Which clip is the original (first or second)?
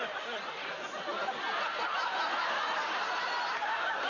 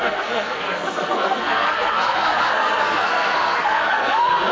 first